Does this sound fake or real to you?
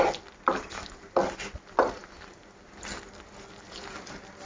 real